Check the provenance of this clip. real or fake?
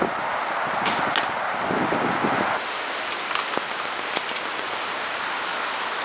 real